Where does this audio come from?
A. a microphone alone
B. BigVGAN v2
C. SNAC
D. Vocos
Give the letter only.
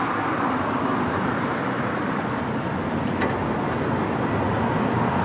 A